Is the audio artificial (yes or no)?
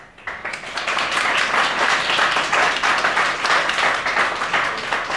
no